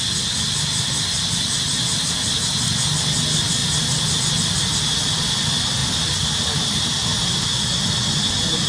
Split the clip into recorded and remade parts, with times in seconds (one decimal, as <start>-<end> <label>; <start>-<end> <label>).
0.0-5.8 recorded; 5.8-6.6 remade; 6.6-8.7 recorded